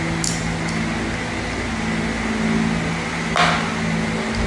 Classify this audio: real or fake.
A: real